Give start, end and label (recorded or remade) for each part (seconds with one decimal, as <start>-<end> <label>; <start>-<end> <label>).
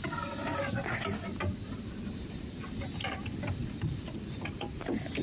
0.0-5.2 recorded